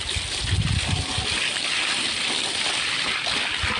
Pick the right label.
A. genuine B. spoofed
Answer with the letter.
A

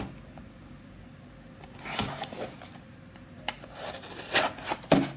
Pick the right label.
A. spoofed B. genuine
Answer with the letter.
B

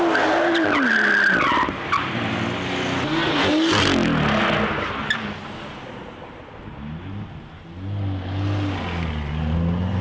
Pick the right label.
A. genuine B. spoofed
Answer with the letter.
A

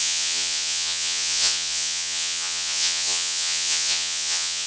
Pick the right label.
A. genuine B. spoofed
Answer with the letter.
B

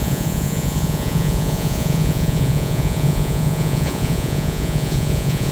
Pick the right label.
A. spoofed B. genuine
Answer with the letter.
A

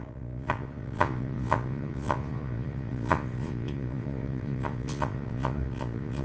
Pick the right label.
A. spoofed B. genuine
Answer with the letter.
A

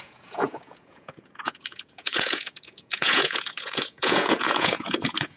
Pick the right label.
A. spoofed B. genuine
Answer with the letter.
A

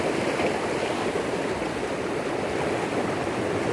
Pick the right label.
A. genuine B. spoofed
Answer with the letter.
A